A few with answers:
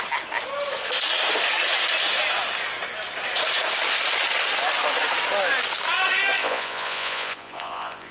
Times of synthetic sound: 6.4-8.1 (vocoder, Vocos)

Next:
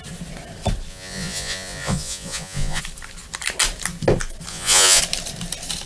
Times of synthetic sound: 0.9-2.8 (vocoder, Vocos); 4.5-5.0

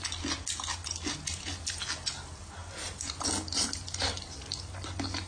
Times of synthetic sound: none

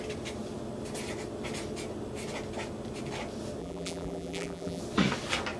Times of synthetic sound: 3.6-4.8 (vocoder, BigVGAN v2)

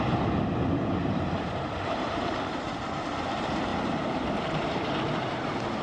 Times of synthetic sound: 1.0-2.8 (vocoder, BigVGAN v2); 3.7-4.8

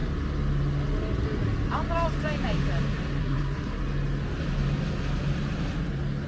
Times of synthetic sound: 3.2-3.8 (codec, SNAC)

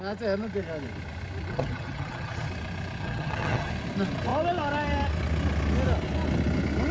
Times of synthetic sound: 1.5-2.5 (vocoder, HiFi-GAN); 3.0-3.7

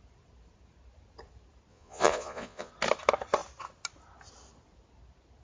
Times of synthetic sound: 1.7-2.7 (vocoder, Vocos)